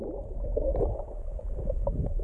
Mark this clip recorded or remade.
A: recorded